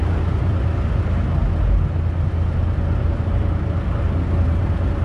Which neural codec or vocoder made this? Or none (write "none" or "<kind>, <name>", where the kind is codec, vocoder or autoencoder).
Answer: none